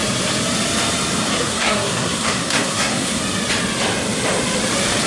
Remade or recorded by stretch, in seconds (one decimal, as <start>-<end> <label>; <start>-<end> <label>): 0.0-1.3 recorded; 1.3-3.2 remade; 3.2-5.1 recorded